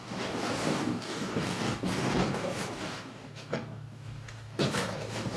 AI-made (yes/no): yes